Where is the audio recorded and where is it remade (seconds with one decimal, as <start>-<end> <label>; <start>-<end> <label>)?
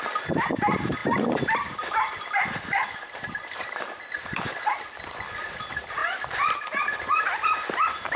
0.0-8.2 remade